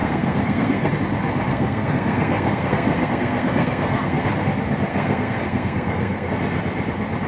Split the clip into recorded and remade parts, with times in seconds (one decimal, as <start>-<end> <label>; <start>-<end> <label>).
0.0-0.9 remade; 0.9-1.5 recorded; 1.5-4.3 remade; 4.3-4.9 recorded; 4.9-6.3 remade; 6.3-7.3 recorded